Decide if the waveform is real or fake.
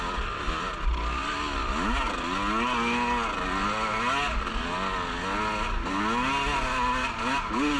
real